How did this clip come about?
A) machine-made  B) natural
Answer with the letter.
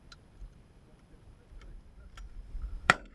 A